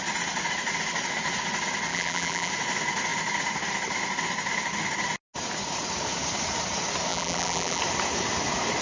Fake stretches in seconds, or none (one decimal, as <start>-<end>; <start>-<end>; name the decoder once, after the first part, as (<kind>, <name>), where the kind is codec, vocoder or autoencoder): 1.9-2.5 (vocoder, BigVGAN v2); 7.1-7.8

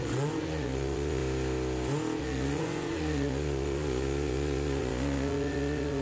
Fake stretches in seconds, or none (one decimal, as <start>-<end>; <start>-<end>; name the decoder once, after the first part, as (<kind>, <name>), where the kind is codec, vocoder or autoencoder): 0.0-1.2 (vocoder, Vocos); 2.2-6.0

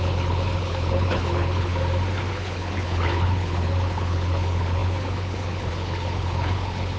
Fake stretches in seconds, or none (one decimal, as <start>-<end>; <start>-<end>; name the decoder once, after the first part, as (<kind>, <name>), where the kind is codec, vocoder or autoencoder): 0.0-1.7 (codec, HILCodec); 2.3-7.0

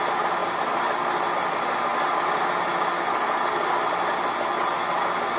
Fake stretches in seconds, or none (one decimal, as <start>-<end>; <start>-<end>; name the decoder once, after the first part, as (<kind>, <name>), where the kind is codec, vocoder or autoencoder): none

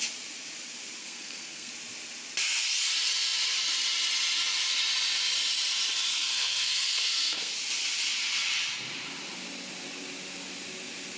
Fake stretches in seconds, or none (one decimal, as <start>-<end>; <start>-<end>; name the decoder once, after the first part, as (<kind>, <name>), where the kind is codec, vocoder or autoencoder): 1.0-1.7 (codec, SNAC); 6.1-7.5

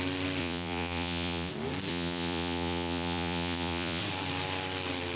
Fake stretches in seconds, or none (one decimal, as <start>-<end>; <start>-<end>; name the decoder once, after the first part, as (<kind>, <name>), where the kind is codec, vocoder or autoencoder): 0.4-1.5 (vocoder, Vocos); 1.9-4.0